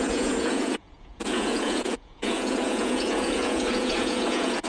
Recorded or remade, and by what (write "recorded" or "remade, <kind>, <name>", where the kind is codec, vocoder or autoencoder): remade, vocoder, Vocos